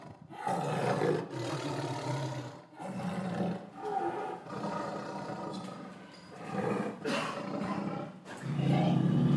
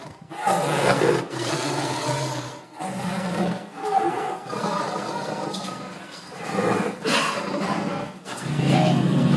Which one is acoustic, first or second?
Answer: first